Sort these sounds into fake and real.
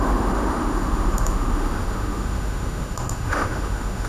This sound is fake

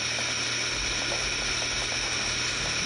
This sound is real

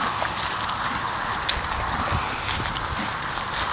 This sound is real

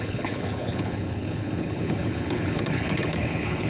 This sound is fake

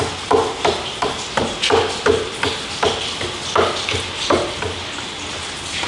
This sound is real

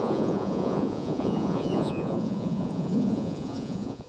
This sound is fake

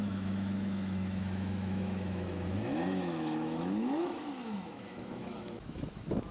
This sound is fake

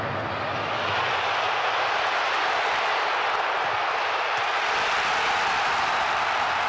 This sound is real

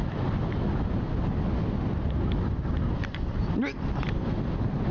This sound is real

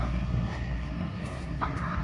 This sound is fake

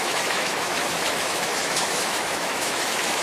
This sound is fake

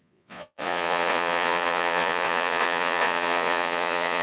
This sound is fake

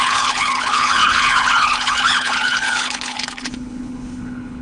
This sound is fake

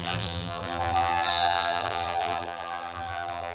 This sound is fake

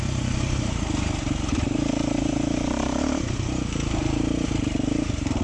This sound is fake